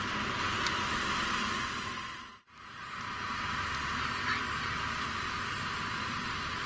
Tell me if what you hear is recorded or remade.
recorded